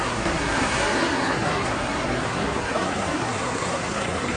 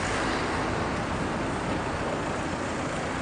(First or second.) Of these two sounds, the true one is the second